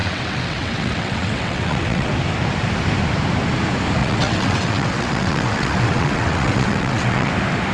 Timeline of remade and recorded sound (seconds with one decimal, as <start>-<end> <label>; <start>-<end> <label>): 0.0-2.1 remade; 2.1-4.0 recorded; 4.0-7.3 remade; 7.3-7.7 recorded